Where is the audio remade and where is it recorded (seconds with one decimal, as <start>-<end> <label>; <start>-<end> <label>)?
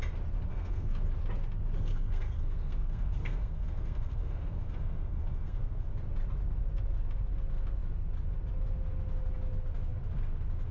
0.0-0.5 recorded; 0.5-1.0 remade; 1.0-1.9 recorded; 1.9-5.9 remade; 5.9-10.7 recorded